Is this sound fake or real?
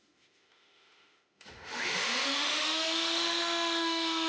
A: fake